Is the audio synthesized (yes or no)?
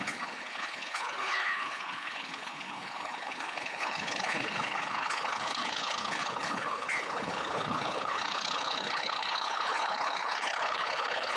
yes